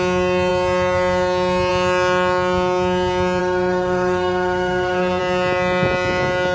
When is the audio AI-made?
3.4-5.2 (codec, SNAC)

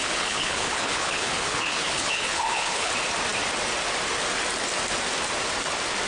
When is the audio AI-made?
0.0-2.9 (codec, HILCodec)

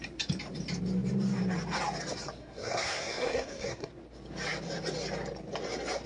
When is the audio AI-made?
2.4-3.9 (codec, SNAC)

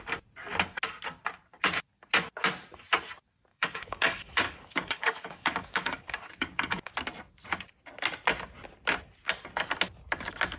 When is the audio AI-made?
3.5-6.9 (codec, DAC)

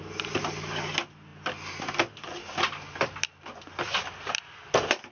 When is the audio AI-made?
none